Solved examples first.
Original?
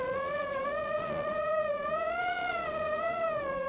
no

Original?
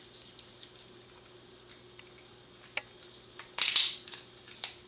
yes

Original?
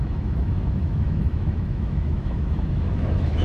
no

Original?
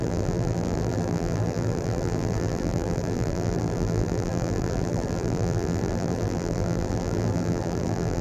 no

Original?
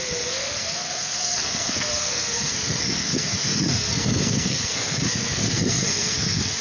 no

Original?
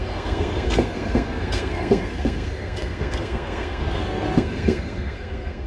no